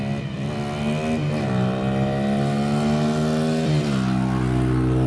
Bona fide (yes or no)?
yes